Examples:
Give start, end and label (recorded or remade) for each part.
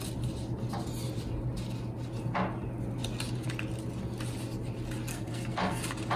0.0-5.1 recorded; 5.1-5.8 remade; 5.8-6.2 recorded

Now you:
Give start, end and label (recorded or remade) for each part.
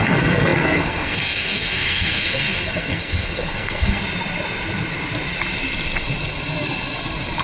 0.0-4.0 remade; 4.0-7.4 recorded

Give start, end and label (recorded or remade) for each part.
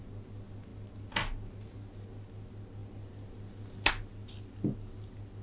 0.0-5.4 recorded